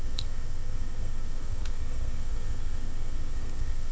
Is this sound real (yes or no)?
no